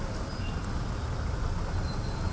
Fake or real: real